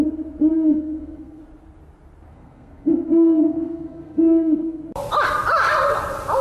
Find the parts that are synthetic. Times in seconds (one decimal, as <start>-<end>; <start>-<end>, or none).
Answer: 0.5-1.4; 2.3-4.8